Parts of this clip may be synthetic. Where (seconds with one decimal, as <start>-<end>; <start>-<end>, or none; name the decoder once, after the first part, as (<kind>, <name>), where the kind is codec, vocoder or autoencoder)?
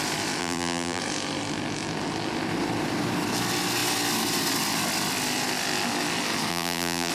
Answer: 0.4-1.0 (vocoder, BigVGAN v2); 6.5-7.1